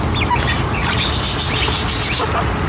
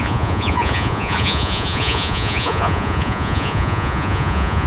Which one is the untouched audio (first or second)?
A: first